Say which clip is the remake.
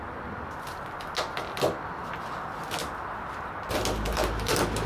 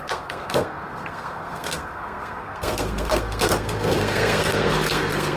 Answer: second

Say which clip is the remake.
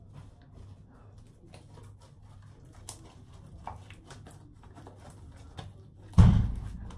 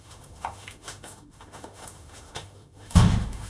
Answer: second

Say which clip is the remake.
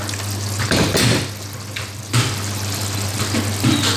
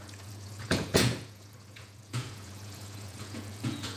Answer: second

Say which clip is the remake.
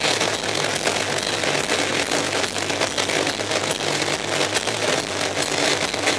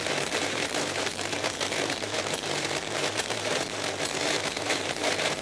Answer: second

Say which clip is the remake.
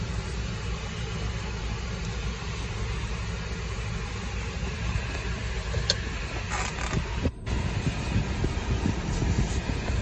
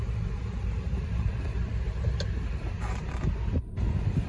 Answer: second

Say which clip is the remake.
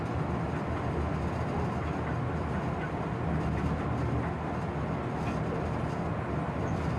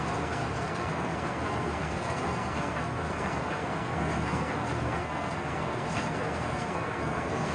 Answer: second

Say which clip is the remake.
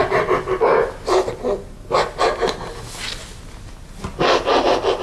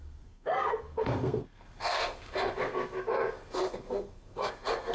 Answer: second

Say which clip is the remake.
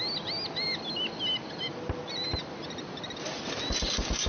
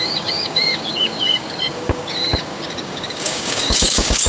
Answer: second